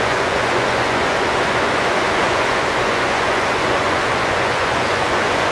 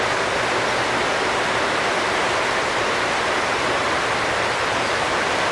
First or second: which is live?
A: second